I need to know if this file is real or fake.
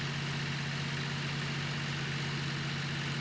real